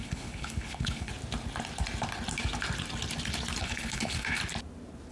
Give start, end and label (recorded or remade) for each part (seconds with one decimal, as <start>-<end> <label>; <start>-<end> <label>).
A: 0.0-1.1 remade; 1.1-3.6 recorded; 3.6-4.4 remade; 4.4-5.1 recorded